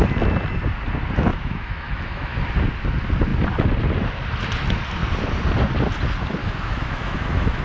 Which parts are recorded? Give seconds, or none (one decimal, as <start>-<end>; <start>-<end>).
0.0-1.3; 2.4-6.4